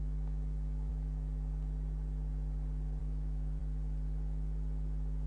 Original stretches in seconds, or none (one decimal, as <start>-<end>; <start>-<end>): 0.9-3.0; 3.6-5.3